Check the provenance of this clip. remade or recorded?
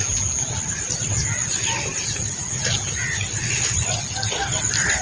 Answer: recorded